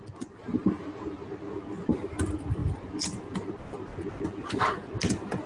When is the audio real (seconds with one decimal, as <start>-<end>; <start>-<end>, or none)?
0.0-0.6; 1.4-2.6; 3.5-5.5